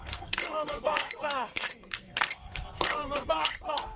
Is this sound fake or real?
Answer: fake